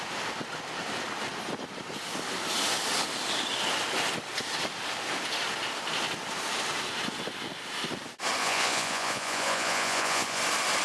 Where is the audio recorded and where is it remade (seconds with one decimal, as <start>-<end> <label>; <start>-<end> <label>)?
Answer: 0.0-8.4 recorded; 8.4-10.4 remade; 10.4-10.8 recorded